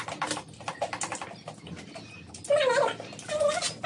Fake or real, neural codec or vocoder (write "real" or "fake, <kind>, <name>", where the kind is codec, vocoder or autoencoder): real